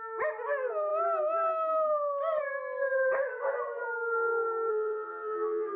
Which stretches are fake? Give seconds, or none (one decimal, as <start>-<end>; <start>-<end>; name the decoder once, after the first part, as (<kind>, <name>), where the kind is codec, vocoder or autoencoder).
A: 4.7-5.8 (vocoder, HiFi-GAN)